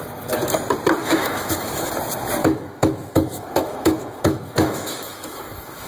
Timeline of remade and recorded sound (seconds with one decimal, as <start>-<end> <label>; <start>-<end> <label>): 0.0-1.0 recorded; 1.0-1.9 remade; 1.9-2.4 recorded; 2.4-5.9 remade